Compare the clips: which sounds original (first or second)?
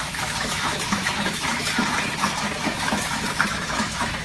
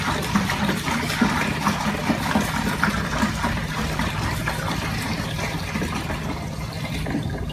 second